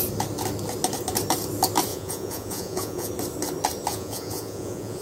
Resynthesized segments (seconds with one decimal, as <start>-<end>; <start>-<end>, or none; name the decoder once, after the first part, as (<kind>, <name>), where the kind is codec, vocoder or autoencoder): 1.9-3.1 (vocoder, Vocos); 3.9-5.0